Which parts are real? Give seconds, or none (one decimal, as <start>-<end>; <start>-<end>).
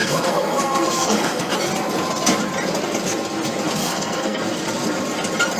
1.5-3.8; 4.4-5.6